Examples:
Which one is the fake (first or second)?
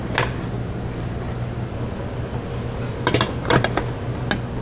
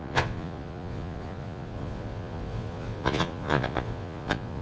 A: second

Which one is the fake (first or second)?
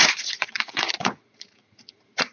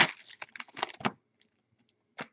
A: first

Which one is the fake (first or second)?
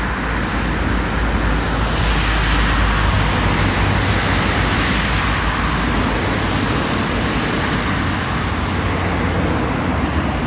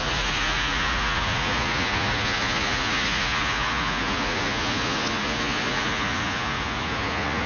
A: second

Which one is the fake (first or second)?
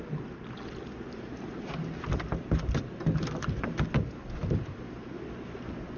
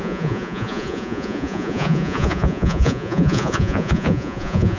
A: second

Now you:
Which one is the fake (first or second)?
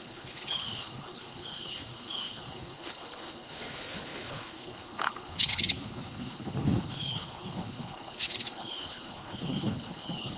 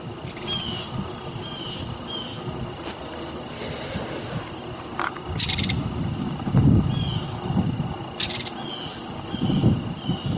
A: first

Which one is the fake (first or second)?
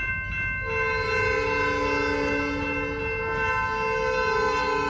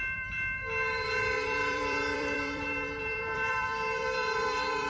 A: second